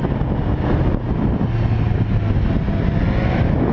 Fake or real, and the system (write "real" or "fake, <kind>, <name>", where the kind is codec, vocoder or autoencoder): real